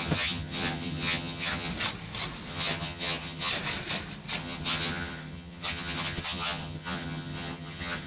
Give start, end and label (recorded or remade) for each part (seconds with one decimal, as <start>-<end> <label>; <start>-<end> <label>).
0.0-1.7 remade; 1.7-2.5 recorded; 2.5-3.5 remade; 3.5-4.4 recorded; 4.4-8.1 remade